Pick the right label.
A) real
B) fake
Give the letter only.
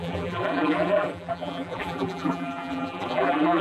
B